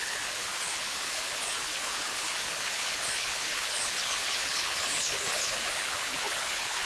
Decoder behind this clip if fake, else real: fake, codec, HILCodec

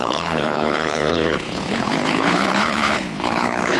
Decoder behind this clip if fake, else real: fake, codec, HILCodec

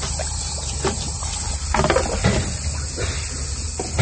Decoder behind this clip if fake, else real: real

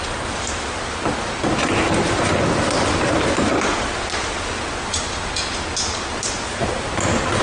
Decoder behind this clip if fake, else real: real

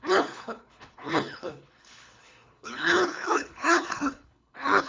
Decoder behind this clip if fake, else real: fake, codec, HILCodec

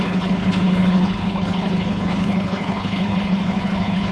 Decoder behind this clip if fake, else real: fake, codec, HILCodec